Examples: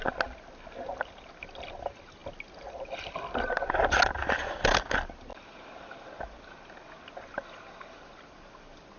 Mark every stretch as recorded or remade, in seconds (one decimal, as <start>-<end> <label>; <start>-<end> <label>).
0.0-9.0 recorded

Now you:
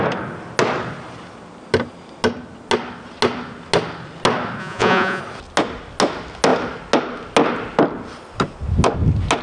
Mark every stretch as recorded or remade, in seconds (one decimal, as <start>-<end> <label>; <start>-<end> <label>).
0.0-4.6 recorded; 4.6-5.2 remade; 5.2-9.4 recorded

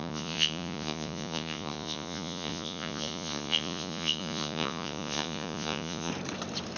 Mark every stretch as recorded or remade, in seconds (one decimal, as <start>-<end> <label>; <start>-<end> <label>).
0.0-6.1 remade; 6.1-6.8 recorded

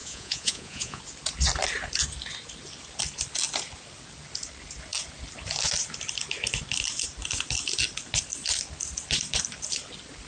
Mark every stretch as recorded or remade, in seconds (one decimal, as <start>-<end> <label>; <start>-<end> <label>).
0.0-1.0 remade; 1.0-10.3 recorded